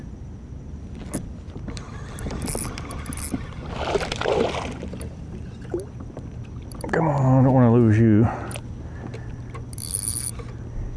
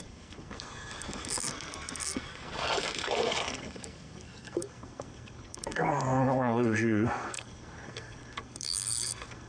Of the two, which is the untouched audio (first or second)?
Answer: first